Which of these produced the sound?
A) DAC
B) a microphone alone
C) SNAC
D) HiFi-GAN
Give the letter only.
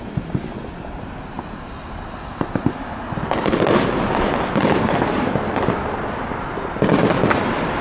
B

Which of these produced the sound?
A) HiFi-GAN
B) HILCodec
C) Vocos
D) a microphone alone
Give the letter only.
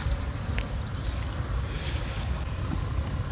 D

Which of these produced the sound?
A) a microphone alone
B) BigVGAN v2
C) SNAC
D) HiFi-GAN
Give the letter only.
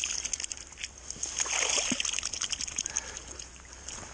A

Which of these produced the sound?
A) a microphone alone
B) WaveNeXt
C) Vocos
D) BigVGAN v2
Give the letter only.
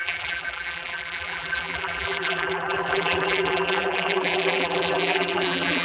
D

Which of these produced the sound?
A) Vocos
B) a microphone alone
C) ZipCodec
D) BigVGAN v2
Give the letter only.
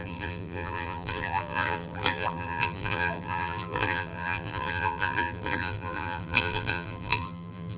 D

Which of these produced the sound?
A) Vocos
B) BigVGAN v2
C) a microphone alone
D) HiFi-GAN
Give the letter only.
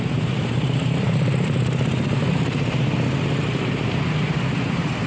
B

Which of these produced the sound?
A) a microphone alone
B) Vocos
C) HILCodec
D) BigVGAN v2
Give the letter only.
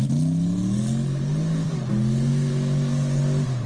A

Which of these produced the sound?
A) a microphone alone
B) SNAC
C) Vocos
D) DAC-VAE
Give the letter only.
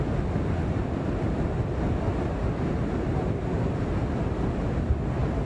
A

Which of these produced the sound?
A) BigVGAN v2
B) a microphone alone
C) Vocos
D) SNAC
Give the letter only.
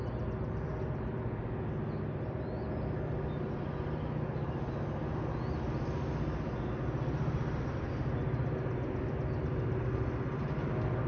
B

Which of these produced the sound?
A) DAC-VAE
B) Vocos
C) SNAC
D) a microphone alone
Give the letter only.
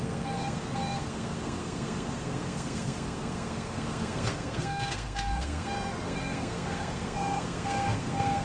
C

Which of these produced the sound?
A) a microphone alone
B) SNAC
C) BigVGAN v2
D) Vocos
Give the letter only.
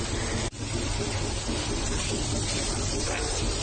A